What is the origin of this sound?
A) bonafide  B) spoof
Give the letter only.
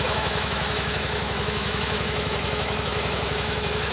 B